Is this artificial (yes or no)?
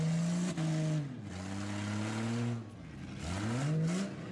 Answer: no